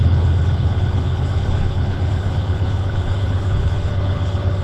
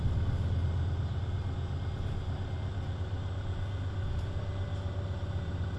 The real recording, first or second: second